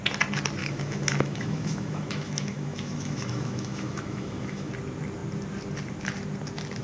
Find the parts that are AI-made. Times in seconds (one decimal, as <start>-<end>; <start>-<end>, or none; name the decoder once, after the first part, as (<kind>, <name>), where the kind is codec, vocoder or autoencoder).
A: 0.6-4.7 (autoencoder, DAC-VAE)